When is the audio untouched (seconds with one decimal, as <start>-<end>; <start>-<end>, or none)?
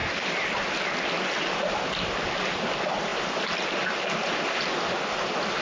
0.0-5.6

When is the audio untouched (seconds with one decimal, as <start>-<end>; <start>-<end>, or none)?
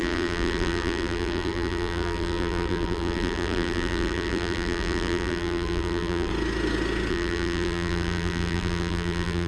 6.3-7.1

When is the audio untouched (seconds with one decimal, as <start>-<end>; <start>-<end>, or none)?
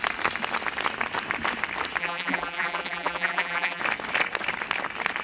0.0-2.0; 3.8-5.2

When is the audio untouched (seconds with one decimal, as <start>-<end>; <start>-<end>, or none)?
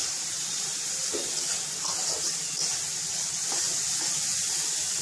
1.0-5.0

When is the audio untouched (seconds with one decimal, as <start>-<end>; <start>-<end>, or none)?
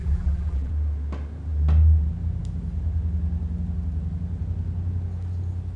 0.7-5.8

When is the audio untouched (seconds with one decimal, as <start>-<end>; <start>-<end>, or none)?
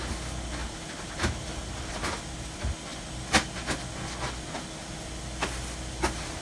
0.0-0.6; 2.0-6.4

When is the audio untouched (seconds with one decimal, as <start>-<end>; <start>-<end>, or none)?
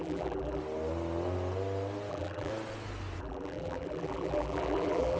0.6-2.1; 2.5-3.2